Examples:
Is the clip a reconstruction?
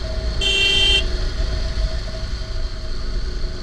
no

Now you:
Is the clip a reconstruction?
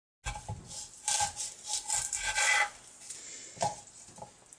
no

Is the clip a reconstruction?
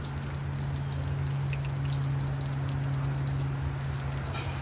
no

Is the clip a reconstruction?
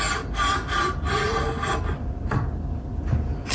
no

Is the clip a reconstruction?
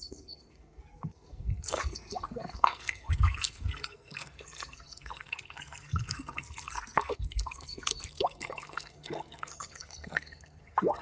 yes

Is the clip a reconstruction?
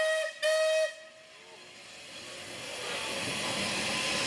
no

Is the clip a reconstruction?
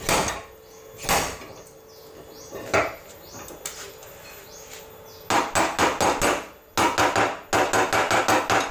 no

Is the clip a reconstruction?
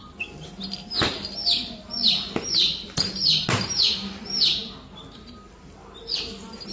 no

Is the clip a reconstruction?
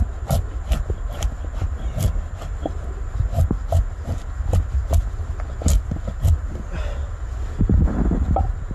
no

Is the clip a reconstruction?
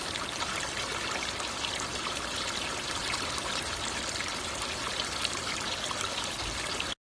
no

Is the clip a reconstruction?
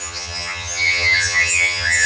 yes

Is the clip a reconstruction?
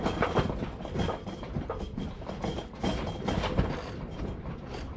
no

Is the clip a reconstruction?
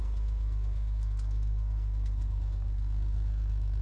yes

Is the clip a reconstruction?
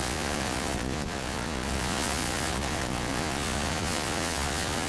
yes